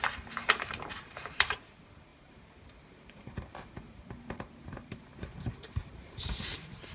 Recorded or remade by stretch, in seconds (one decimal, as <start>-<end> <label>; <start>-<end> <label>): 0.0-6.9 remade